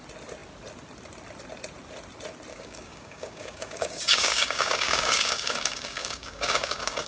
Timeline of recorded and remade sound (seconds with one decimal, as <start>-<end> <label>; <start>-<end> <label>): 0.0-2.5 recorded; 2.5-7.1 remade